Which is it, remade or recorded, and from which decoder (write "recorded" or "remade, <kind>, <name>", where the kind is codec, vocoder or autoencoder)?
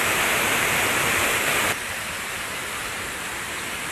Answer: remade, vocoder, BigVGAN v2